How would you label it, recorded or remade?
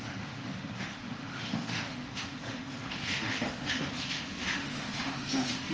remade